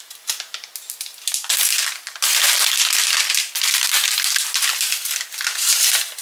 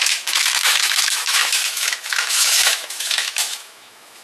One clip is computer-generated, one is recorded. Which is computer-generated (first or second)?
second